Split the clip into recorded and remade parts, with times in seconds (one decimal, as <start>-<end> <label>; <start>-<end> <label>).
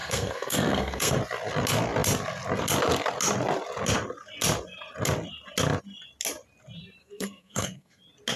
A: 0.0-1.2 remade; 1.2-7.0 recorded; 7.0-8.0 remade; 8.0-8.4 recorded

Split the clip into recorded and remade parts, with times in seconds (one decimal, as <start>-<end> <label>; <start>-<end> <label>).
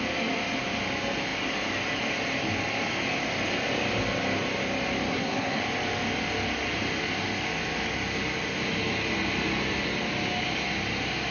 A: 0.0-5.1 recorded; 5.1-5.6 remade; 5.6-11.3 recorded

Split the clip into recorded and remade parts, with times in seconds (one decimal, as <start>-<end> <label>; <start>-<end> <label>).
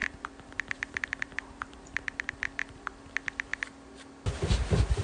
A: 0.0-3.0 remade; 3.0-3.5 recorded; 3.5-4.0 remade; 4.0-5.0 recorded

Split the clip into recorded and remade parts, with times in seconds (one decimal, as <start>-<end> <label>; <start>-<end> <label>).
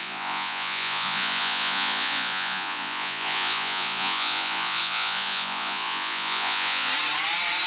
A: 0.0-6.9 remade; 6.9-7.7 recorded